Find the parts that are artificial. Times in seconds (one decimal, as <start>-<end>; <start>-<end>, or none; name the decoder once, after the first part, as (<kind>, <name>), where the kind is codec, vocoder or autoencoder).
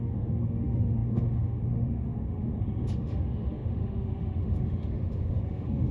0.0-5.9 (autoencoder, DAC-VAE)